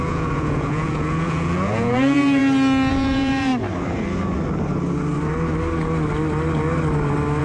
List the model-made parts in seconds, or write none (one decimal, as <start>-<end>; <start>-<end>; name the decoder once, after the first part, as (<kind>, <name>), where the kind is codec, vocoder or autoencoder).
0.0-2.4 (vocoder, Vocos); 2.9-3.5